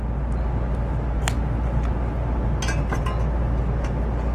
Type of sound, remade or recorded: recorded